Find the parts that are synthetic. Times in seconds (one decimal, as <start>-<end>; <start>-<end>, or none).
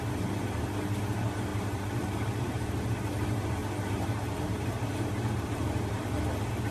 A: 1.5-2.8; 3.6-5.9